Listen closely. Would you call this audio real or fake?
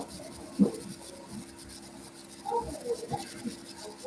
real